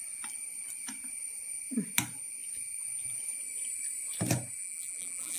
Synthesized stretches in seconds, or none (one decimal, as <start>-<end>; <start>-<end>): 4.6-5.4